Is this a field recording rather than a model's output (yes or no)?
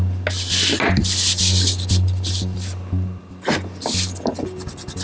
yes